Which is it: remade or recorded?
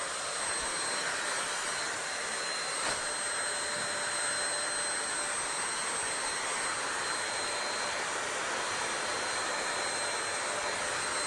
recorded